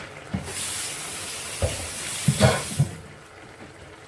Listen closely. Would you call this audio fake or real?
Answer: fake